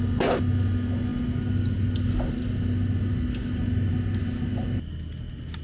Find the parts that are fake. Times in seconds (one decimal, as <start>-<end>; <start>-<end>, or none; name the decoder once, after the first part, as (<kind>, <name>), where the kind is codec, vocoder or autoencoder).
none